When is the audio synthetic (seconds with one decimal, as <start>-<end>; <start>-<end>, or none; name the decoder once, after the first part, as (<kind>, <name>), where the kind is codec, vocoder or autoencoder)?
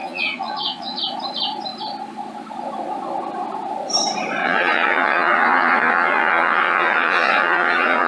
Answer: 0.0-1.0 (vocoder, Vocos); 4.4-8.1